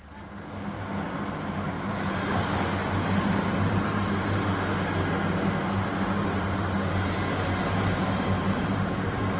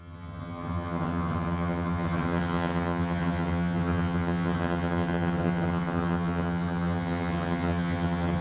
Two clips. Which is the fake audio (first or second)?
second